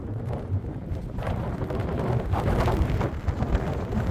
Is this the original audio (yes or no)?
yes